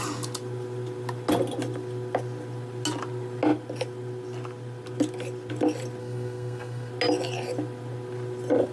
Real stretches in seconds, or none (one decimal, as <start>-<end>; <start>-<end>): 0.0-6.0; 6.9-8.7